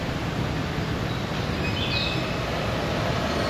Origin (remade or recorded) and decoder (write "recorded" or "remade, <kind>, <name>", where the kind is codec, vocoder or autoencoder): recorded